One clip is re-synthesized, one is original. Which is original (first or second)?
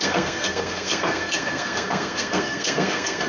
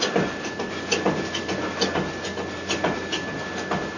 second